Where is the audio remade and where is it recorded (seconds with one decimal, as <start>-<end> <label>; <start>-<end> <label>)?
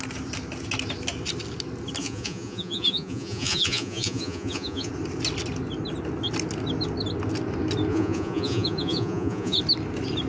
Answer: 0.0-2.0 recorded; 2.0-4.9 remade; 4.9-7.9 recorded; 7.9-9.6 remade; 9.6-10.3 recorded